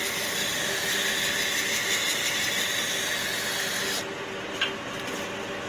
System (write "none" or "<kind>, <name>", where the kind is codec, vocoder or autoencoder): none